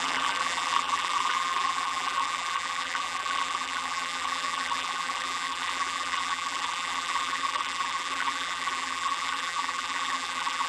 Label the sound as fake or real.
fake